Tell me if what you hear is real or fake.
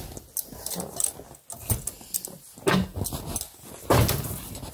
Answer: real